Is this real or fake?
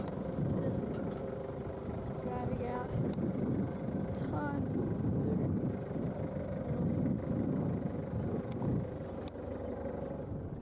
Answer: real